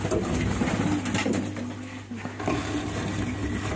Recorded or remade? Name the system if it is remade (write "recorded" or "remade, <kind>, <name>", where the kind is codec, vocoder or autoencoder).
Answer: recorded